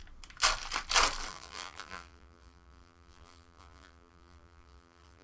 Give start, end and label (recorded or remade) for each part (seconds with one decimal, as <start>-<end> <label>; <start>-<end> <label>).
0.0-1.3 recorded; 1.3-5.2 remade